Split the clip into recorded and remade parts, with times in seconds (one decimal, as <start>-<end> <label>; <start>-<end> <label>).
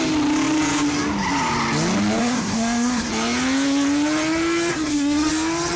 0.0-2.2 recorded; 2.2-3.1 remade; 3.1-4.7 recorded; 4.7-5.3 remade; 5.3-5.8 recorded